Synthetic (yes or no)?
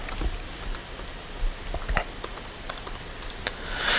no